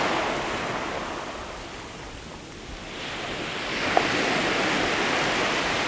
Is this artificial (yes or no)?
no